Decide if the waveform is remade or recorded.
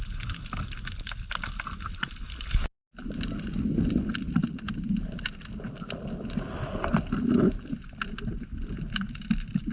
recorded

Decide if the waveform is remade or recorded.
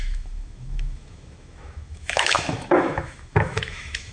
remade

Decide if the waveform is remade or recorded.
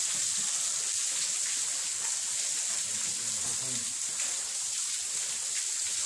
recorded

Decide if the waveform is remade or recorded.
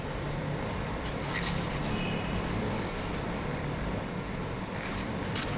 remade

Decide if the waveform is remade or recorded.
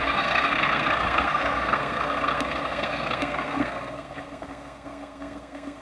remade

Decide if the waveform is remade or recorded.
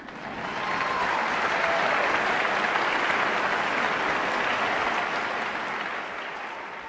recorded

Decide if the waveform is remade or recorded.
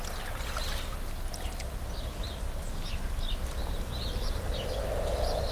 recorded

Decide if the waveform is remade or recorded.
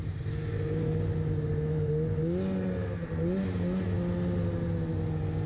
recorded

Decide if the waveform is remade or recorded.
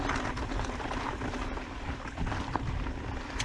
recorded